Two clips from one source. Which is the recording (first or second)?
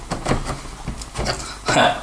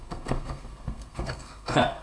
first